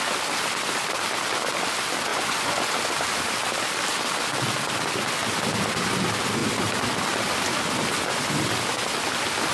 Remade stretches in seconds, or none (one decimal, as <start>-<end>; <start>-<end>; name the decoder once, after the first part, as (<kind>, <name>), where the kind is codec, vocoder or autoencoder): 2.1-2.7 (vocoder, Vocos)